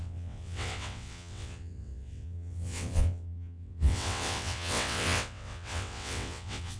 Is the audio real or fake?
fake